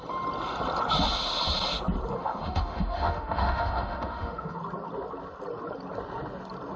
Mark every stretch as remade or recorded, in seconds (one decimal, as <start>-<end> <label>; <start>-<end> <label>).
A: 0.0-2.2 recorded; 2.2-4.6 remade; 4.6-6.8 recorded